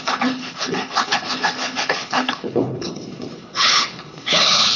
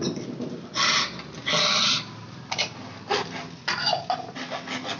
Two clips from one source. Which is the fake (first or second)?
first